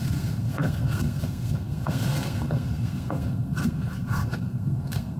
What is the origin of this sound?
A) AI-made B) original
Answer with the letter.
A